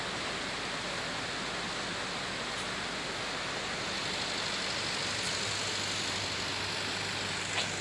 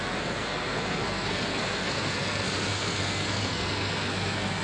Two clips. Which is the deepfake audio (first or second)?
second